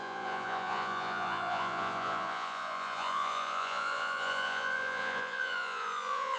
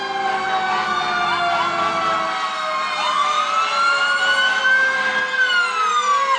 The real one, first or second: second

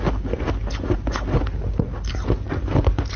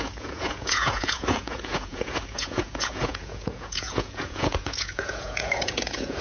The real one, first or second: first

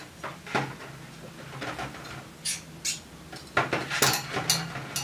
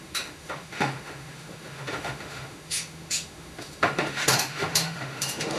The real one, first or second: first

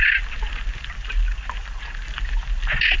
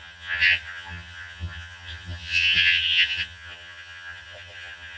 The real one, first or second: first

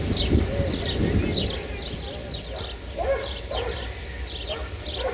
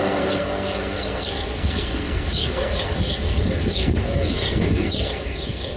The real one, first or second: first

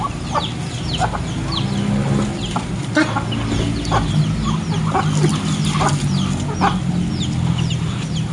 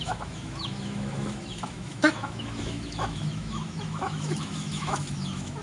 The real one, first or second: first